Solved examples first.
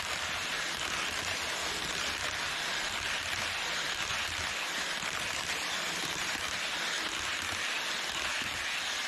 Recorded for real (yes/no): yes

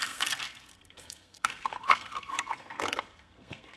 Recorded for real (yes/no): no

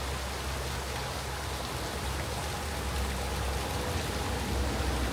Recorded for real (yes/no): yes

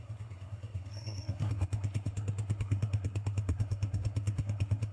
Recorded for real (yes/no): no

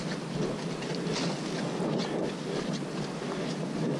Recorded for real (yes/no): yes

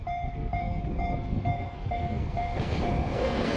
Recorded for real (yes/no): no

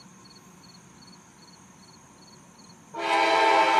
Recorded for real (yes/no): yes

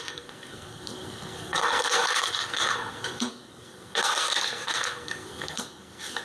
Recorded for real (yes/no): no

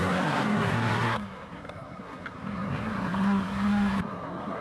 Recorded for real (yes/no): no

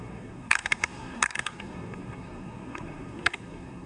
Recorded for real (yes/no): no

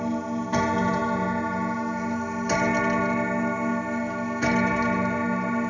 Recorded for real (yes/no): yes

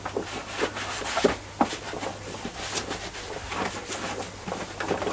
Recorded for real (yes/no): yes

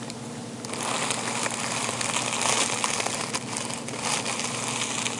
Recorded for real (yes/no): yes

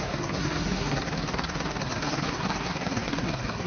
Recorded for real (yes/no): no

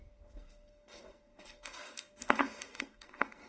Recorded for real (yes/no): no